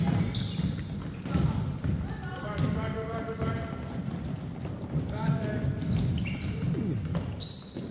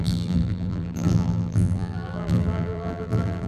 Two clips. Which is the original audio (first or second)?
first